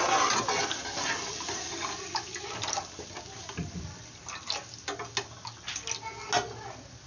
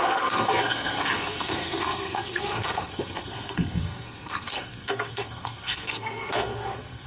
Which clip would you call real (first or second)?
first